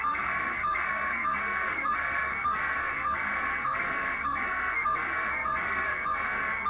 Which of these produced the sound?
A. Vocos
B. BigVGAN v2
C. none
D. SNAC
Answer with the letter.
D